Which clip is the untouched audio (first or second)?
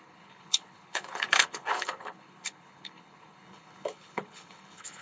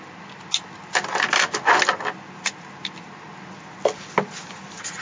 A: second